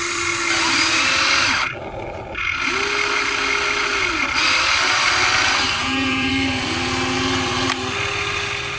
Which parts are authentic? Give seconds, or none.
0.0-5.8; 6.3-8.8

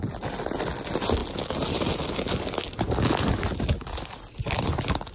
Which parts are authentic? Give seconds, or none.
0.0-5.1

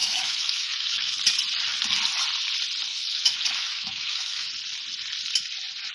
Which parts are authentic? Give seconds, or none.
1.1-2.9; 4.5-5.9

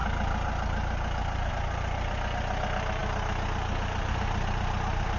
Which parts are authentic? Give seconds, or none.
0.0-5.2

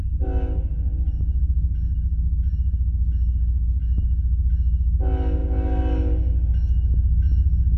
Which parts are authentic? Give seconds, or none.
0.0-7.8

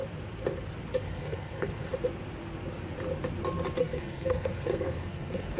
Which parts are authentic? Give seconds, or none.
0.0-1.0; 1.9-3.8

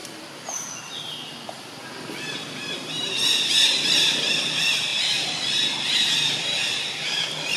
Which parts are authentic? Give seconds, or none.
0.0-1.0; 1.8-3.0

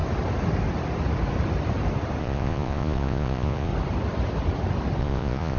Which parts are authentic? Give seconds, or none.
0.0-2.2; 3.7-5.0